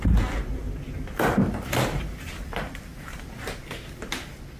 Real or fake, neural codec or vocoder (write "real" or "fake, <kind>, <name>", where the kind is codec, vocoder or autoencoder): real